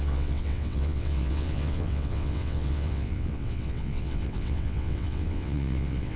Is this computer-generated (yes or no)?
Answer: yes